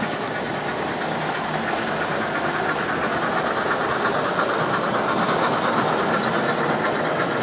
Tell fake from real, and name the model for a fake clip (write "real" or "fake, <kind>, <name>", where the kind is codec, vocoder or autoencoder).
real